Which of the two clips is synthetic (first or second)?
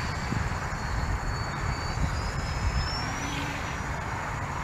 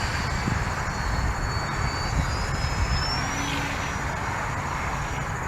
first